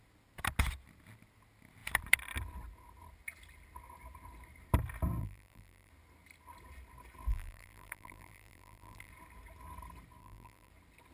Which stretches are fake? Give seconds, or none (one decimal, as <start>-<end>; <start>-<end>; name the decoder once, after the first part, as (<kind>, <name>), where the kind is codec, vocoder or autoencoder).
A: 5.2-5.9 (vocoder, BigVGAN v2); 7.3-9.1; 10.2-10.7